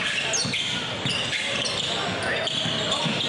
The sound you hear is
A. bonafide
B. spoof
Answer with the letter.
A